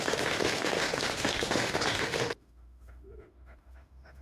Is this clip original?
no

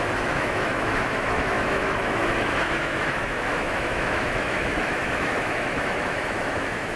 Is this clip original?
no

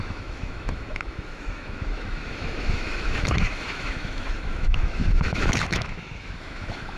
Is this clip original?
no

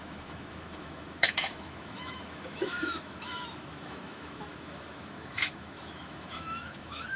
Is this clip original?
no